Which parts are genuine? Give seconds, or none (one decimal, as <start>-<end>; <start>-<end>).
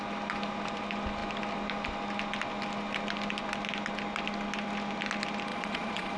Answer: 0.0-5.5